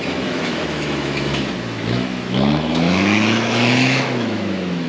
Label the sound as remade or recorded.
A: remade